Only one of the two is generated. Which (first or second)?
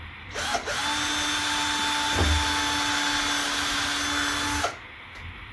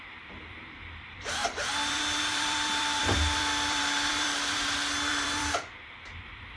second